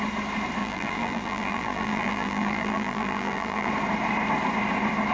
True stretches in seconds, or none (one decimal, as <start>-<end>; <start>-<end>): 0.0-0.6; 3.7-5.1